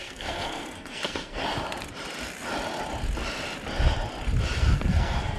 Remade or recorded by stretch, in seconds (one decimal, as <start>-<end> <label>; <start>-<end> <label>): 0.0-1.4 remade; 1.4-4.6 recorded; 4.6-5.4 remade